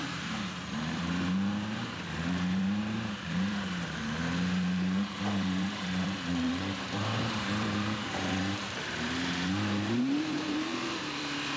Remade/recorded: remade